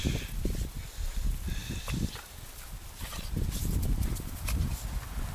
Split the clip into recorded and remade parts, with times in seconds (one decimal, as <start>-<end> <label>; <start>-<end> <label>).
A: 0.0-0.7 recorded; 0.7-1.6 remade; 1.6-3.6 recorded; 3.6-5.3 remade